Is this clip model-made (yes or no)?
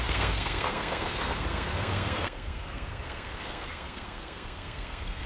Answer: yes